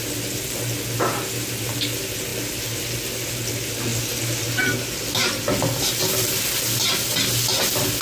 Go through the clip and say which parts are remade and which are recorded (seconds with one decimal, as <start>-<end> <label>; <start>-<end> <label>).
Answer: 0.0-8.0 recorded